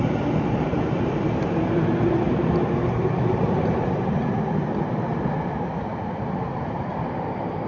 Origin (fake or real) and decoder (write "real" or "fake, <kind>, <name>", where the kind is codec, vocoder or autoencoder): fake, vocoder, BigVGAN v2